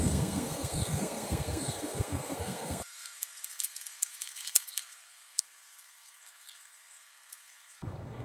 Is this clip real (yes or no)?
no